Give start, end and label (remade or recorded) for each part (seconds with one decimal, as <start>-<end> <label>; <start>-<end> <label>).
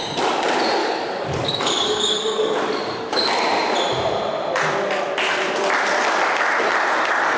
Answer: 0.0-0.8 recorded; 0.8-3.2 remade; 3.2-7.4 recorded